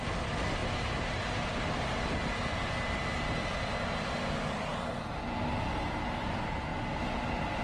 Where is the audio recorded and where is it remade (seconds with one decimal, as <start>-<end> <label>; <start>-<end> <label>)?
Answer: 0.0-7.6 recorded